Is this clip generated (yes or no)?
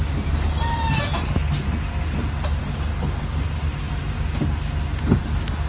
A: no